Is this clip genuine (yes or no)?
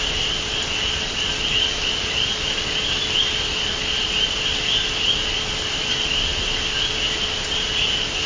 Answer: yes